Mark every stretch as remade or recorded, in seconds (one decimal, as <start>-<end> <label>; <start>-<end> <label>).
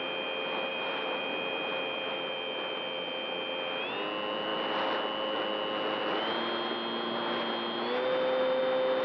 0.0-0.7 recorded; 0.7-1.2 remade; 1.2-9.0 recorded